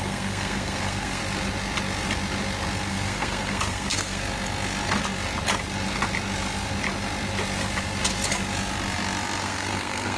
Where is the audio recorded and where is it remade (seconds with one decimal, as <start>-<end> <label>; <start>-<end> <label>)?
0.0-1.2 remade; 1.2-2.9 recorded; 2.9-4.2 remade; 4.2-9.4 recorded; 9.4-10.2 remade